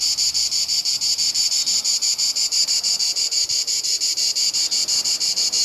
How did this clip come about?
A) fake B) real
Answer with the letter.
A